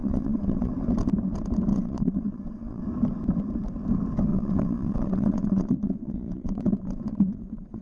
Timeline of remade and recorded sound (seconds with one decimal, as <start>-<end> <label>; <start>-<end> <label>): 0.0-0.7 remade; 0.7-1.7 recorded; 1.7-2.8 remade; 2.8-4.3 recorded; 4.3-7.8 remade